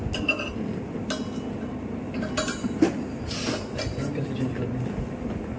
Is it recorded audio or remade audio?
recorded